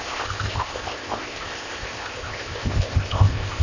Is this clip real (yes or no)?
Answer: no